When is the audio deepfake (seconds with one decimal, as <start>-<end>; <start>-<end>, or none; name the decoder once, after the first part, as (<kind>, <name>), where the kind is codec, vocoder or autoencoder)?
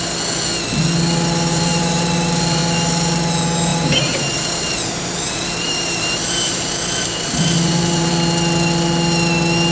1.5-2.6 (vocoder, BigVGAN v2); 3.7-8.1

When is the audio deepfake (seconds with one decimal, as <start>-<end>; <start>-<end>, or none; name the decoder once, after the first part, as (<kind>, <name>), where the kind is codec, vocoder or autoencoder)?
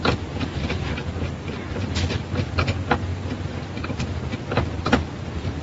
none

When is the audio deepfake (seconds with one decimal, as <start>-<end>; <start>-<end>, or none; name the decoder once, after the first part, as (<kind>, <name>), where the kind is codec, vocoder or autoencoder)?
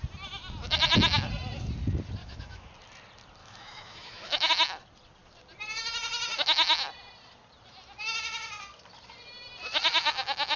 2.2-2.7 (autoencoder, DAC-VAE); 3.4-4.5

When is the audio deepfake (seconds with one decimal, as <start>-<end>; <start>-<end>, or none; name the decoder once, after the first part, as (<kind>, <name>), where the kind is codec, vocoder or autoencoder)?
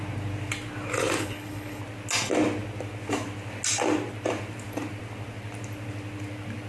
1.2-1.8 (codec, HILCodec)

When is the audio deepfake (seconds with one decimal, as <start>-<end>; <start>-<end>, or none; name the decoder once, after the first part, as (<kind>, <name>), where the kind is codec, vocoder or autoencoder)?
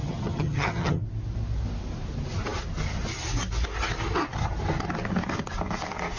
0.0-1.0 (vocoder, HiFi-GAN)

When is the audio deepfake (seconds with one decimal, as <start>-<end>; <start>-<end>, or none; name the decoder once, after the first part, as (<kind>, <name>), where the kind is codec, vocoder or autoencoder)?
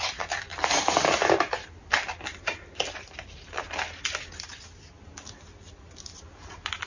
none